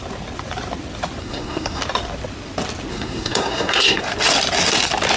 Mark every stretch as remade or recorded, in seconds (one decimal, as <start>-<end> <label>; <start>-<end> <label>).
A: 0.0-1.2 recorded; 1.2-1.8 remade; 1.8-2.9 recorded; 2.9-4.0 remade; 4.0-5.2 recorded